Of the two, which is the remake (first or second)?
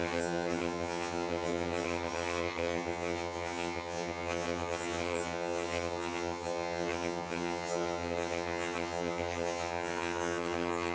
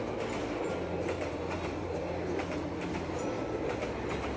first